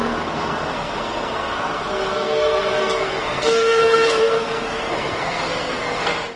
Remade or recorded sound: remade